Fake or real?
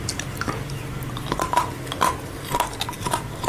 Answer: real